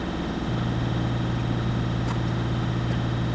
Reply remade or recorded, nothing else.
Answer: recorded